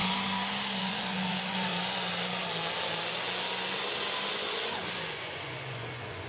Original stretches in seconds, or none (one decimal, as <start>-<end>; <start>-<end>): 0.0-0.8; 1.7-4.3